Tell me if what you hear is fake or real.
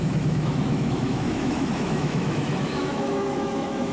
fake